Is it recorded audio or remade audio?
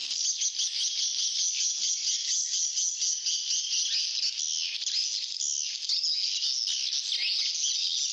recorded